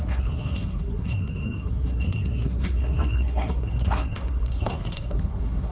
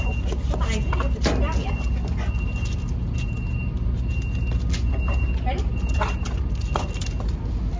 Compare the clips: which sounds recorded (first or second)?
second